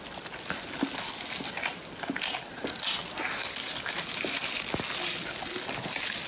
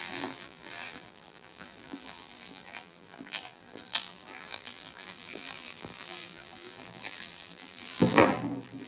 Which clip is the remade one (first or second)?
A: second